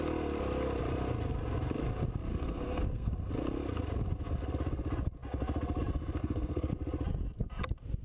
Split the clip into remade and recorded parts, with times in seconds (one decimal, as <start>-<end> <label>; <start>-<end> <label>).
0.0-2.3 recorded; 2.3-3.1 remade; 3.1-6.2 recorded; 6.2-6.7 remade; 6.7-8.0 recorded